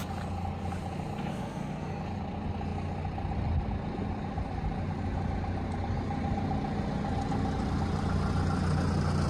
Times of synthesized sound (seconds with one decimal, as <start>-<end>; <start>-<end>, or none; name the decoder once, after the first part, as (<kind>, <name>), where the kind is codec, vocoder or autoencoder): 1.3-2.0 (codec, SNAC)